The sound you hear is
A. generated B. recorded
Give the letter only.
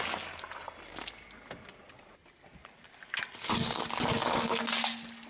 B